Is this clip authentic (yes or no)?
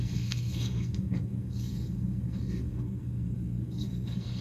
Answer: no